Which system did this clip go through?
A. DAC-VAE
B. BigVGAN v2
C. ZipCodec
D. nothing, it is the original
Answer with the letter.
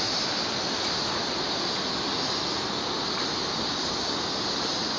D